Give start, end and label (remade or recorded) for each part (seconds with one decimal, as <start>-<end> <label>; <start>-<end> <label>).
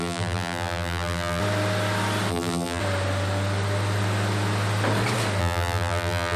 0.0-1.4 remade; 1.4-2.3 recorded; 2.3-2.8 remade; 2.8-5.4 recorded; 5.4-6.4 remade